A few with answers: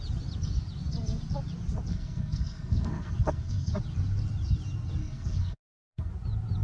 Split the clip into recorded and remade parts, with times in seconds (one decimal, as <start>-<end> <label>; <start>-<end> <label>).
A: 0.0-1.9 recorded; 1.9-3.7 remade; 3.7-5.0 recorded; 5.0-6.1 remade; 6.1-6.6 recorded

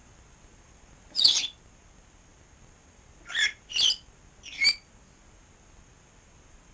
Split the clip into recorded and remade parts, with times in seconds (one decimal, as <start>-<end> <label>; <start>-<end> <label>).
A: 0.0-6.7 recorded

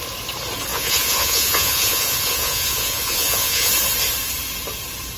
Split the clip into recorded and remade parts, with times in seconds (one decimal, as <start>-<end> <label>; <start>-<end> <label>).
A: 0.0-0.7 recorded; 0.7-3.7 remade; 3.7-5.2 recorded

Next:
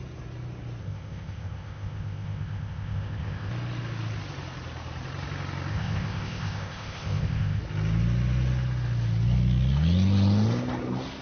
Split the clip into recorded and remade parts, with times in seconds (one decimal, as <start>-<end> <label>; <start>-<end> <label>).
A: 0.0-0.8 recorded; 0.8-3.5 remade; 3.5-5.7 recorded; 5.7-7.6 remade; 7.6-11.2 recorded

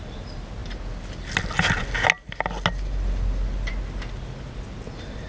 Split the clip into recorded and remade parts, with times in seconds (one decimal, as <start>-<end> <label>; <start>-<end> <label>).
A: 0.0-5.3 recorded